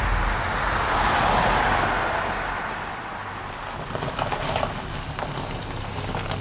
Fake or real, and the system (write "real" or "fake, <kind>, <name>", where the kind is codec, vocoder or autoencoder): real